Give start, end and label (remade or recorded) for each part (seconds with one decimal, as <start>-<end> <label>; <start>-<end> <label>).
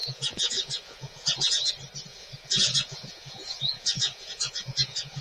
0.0-1.7 remade; 1.7-2.1 recorded; 2.1-5.2 remade